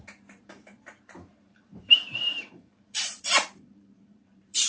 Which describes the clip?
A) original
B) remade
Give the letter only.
B